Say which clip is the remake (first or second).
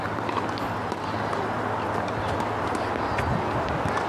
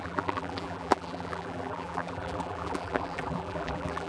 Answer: second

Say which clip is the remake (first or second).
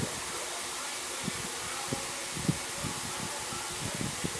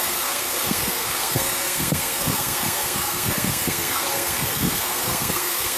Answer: second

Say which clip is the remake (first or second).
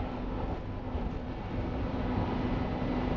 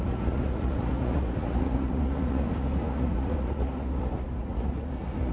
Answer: second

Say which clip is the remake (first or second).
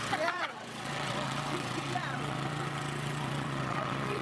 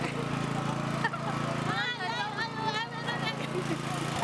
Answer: first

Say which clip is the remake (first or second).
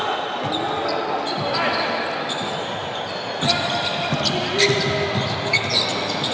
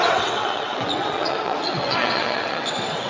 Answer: second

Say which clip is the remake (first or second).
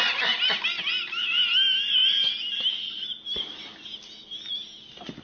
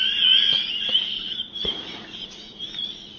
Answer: second